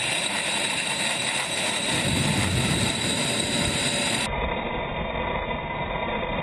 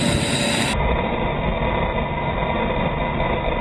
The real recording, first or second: second